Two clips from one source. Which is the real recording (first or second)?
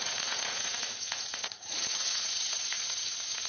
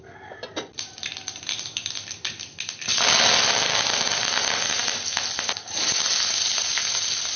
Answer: second